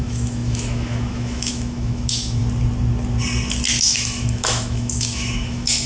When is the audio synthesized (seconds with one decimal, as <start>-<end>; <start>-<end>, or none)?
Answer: 0.0-2.4; 3.8-5.9